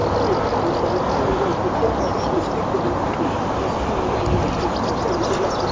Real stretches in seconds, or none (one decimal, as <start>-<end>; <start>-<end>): 0.0-5.7